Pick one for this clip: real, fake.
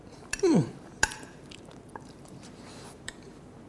fake